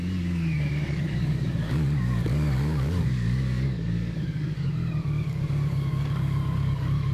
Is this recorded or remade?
remade